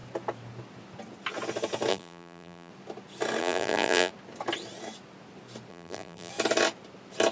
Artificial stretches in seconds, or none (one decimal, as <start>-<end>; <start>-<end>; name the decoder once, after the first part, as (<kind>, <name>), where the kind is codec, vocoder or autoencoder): 1.9-2.7 (vocoder, BigVGAN v2); 3.4-4.1; 5.7-6.3